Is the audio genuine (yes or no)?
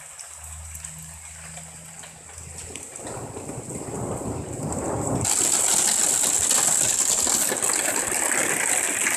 yes